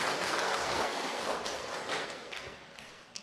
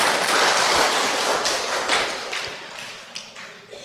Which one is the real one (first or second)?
second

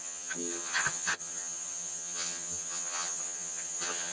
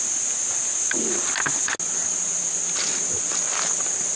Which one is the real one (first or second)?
second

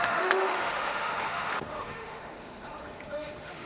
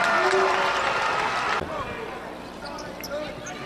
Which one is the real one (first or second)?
second